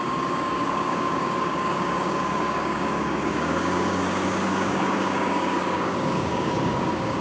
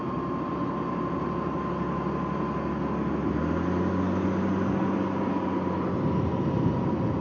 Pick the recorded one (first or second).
second